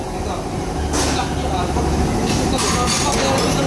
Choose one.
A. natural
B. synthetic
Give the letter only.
A